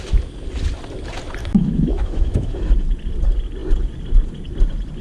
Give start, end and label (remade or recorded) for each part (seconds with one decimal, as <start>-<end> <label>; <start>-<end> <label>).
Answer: 0.0-1.4 recorded; 1.4-2.7 remade; 2.7-5.0 recorded